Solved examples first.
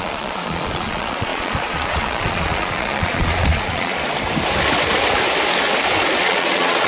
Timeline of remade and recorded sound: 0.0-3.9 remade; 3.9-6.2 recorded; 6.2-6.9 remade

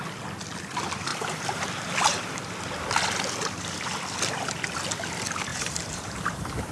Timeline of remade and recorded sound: 0.0-1.1 recorded; 1.1-2.3 remade; 2.3-5.5 recorded; 5.5-6.7 remade

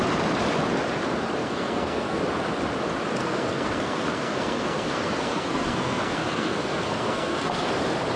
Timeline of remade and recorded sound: 0.0-1.4 recorded; 1.4-2.2 remade; 2.2-3.2 recorded; 3.2-7.7 remade; 7.7-8.2 recorded